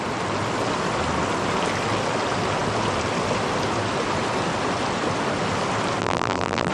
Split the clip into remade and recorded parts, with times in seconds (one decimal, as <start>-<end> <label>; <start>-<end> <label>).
0.0-6.0 recorded; 6.0-6.7 remade

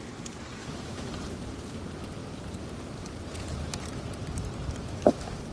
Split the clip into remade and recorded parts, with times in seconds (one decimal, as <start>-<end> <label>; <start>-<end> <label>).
0.0-0.6 recorded; 0.6-1.1 remade; 1.1-4.8 recorded; 4.8-5.5 remade

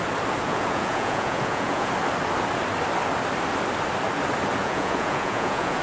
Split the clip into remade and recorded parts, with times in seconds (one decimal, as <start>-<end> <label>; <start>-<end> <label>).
0.0-0.5 recorded; 0.5-1.9 remade; 1.9-4.6 recorded; 4.6-5.8 remade

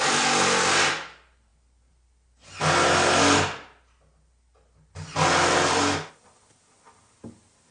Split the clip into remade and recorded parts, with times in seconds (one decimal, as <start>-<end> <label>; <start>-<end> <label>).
0.0-7.7 recorded